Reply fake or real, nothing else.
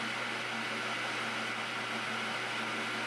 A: real